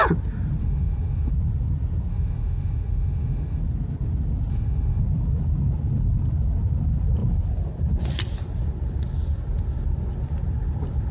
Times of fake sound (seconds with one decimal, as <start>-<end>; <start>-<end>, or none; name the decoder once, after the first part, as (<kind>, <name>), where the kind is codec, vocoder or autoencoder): 0.6-1.3 (autoencoder, DAC-VAE); 2.1-3.6; 4.5-5.0

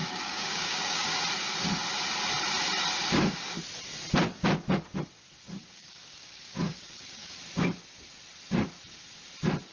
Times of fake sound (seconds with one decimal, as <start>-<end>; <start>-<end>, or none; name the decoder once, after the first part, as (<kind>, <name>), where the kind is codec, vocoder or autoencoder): 0.0-1.2 (codec, DAC); 5.6-7.4

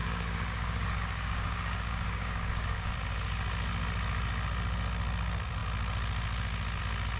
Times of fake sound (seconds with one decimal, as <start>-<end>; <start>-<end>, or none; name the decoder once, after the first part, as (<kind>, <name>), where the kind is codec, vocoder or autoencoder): 0.0-2.9 (codec, DAC)

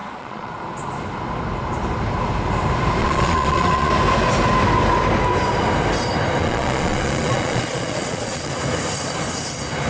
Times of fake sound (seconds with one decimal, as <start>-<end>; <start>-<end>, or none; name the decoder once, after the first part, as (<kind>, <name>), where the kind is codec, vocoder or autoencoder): 0.0-0.5 (vocoder, Vocos); 3.0-3.9; 6.4-8.5

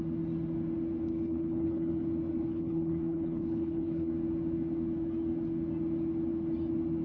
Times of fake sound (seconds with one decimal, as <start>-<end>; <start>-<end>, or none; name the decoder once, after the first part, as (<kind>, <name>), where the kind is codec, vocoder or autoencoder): 1.1-1.9 (codec, HILCodec); 2.5-4.1

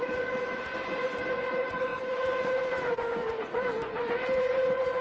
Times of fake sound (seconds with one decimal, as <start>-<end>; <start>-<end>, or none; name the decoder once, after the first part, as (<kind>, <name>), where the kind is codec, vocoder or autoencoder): 0.0-5.0 (vocoder, Vocos)

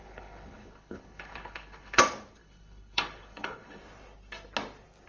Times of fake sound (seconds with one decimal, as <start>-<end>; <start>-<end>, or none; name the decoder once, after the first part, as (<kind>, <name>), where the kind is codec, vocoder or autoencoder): 0.0-2.0 (codec, HILCodec); 2.4-3.8